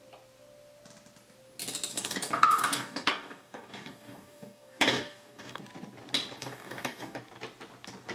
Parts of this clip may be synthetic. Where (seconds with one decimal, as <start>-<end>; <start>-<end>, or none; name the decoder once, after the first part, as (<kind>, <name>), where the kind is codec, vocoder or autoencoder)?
1.9-5.6 (codec, DAC); 6.4-7.2